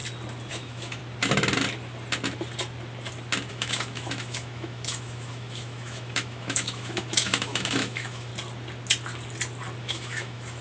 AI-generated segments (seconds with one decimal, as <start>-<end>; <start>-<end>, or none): 0.5-1.0; 3.5-8.3; 9.8-10.6